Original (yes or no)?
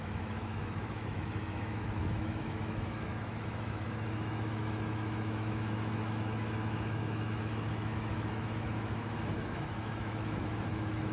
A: no